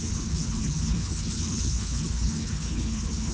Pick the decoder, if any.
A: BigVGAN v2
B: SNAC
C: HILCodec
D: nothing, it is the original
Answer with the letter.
C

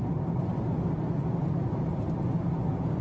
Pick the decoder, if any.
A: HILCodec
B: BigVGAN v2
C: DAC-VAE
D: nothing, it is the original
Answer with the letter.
D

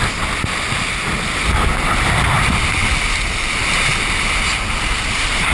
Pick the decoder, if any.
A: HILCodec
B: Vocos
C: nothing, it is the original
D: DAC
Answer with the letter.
C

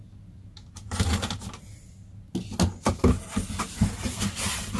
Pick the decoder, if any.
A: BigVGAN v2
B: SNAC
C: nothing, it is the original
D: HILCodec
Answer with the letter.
C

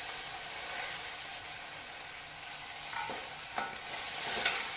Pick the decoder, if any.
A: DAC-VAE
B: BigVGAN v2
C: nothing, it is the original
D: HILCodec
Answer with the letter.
C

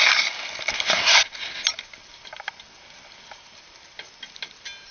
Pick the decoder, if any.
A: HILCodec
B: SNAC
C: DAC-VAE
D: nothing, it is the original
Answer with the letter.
D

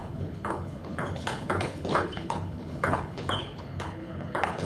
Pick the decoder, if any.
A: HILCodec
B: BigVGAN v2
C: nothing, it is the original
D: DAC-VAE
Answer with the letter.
A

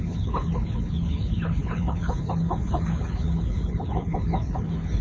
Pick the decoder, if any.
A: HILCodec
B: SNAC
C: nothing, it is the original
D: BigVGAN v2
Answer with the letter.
A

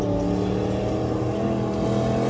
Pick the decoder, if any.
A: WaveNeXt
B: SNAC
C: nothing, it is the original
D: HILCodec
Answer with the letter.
C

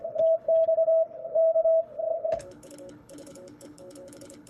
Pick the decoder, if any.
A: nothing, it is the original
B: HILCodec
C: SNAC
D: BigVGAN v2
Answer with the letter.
B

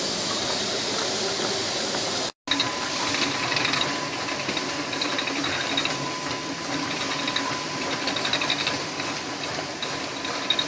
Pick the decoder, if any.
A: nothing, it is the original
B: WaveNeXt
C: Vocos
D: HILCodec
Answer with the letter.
A